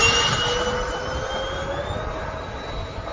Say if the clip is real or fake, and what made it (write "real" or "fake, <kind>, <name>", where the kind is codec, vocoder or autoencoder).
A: real